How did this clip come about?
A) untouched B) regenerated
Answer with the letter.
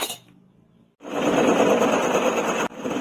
A